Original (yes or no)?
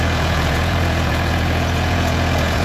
no